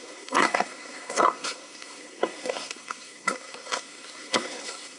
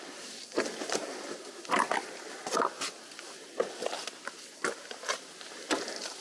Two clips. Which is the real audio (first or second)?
second